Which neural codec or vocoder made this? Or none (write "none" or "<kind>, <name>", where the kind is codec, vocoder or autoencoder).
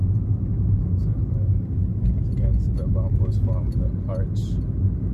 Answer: none